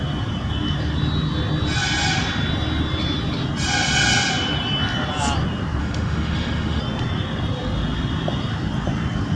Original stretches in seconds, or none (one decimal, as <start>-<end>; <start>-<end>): 0.0-5.8; 6.8-9.4